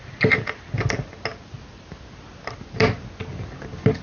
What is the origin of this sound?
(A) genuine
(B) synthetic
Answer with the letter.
A